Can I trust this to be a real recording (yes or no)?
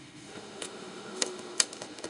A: no